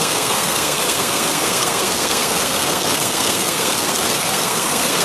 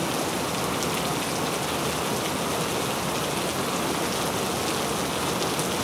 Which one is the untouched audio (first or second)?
second